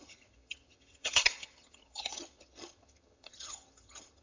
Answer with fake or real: fake